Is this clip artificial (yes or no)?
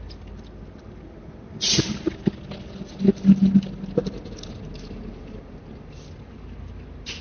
no